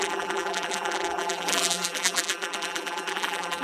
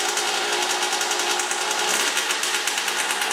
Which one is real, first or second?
second